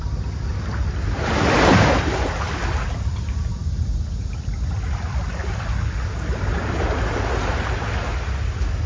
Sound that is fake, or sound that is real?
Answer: real